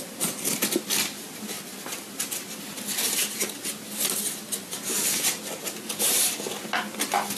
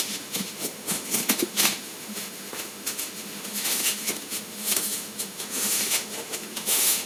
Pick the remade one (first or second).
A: second